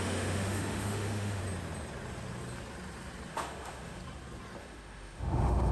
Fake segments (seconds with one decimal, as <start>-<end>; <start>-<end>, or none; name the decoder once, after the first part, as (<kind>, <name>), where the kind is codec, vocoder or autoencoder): 0.0-1.4 (autoencoder, DAC-VAE); 3.3-4.0; 4.6-5.7